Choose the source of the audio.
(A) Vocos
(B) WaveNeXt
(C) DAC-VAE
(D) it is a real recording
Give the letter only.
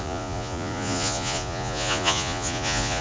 A